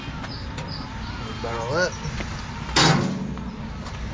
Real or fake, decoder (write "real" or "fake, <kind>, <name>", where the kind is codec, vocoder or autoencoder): real